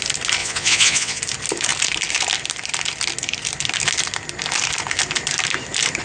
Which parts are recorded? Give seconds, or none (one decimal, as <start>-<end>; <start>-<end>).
0.0-0.4; 1.2-6.0